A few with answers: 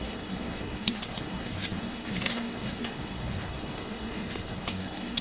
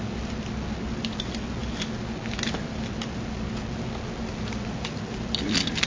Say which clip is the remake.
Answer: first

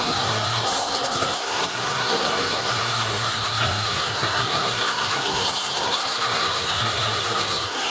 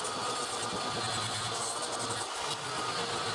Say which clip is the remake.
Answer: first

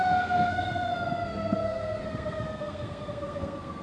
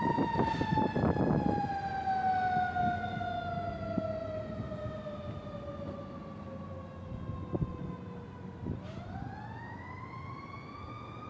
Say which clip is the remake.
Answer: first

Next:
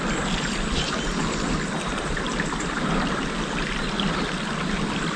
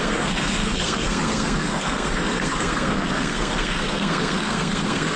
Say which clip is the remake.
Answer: second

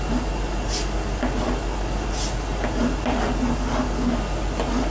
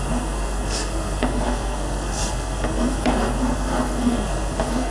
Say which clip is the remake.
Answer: second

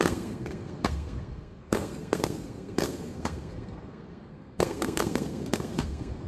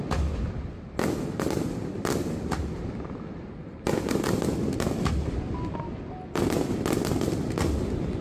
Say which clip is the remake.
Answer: first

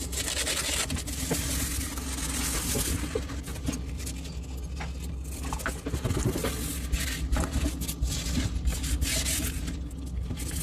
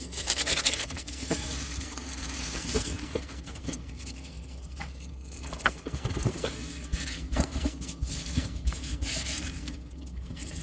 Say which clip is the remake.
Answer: second